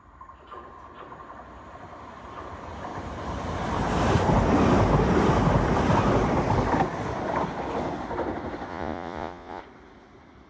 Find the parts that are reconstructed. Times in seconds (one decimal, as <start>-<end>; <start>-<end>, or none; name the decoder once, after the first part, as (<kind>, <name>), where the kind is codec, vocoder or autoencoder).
8.7-9.6 (vocoder, Vocos)